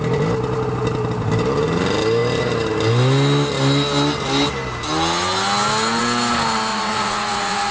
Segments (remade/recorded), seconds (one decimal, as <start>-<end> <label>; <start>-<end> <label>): 0.0-6.7 recorded; 6.7-7.7 remade